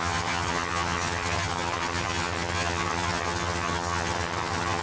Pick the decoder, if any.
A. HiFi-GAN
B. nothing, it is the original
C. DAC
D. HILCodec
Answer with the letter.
A